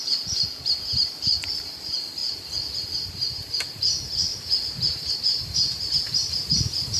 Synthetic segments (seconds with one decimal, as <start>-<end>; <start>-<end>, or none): 0.0-2.2; 3.1-7.0